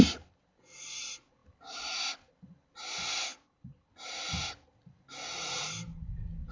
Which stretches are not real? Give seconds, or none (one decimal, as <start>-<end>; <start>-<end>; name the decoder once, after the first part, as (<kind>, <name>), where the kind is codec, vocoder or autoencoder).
none